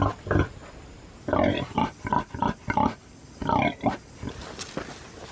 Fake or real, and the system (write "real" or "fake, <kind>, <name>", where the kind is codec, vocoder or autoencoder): real